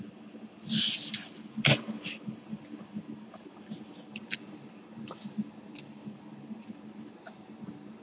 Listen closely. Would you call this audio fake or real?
real